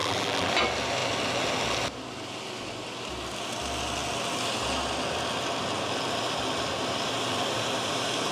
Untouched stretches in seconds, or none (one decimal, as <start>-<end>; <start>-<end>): 0.5-8.3

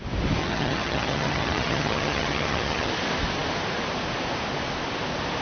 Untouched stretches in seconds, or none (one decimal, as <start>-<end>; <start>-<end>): 0.0-0.4; 2.9-5.4

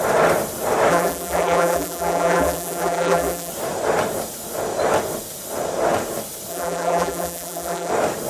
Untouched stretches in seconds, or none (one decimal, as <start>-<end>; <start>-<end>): 0.0-0.9; 3.5-6.5; 7.9-8.3

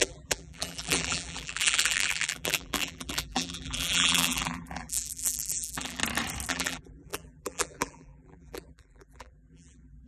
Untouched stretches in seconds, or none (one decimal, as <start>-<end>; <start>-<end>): 6.0-6.5

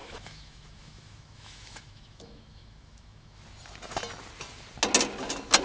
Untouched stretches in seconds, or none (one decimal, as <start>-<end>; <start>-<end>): 3.4-5.6

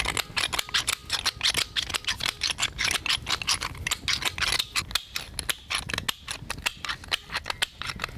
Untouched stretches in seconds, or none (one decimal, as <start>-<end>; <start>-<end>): 0.0-8.2

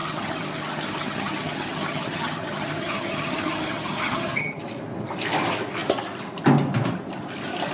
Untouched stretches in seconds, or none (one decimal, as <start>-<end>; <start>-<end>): 4.6-7.7